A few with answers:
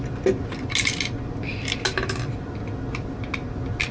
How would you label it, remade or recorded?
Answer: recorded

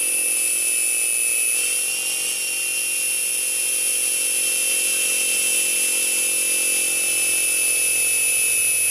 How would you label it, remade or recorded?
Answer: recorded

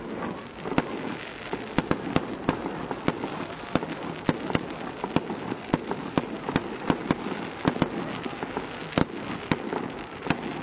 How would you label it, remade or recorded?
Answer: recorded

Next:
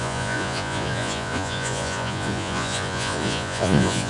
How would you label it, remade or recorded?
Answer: remade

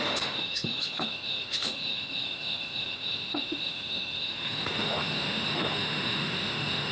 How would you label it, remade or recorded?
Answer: remade